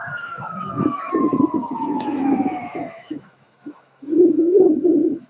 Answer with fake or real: fake